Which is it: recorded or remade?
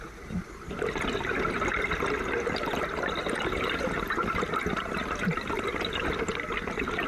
recorded